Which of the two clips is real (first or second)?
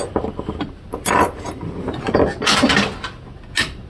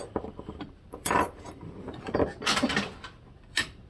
first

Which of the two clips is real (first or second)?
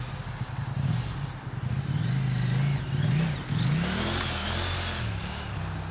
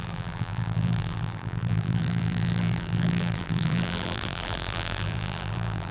first